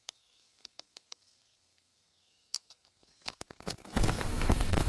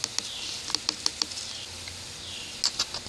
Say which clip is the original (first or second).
second